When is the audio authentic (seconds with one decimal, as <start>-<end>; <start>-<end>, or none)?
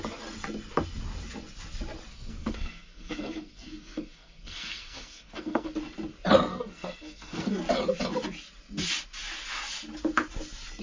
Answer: 0.0-2.1; 5.7-6.5; 7.5-10.8